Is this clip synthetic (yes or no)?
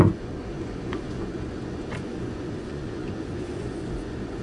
yes